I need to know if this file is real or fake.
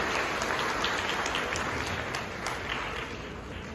real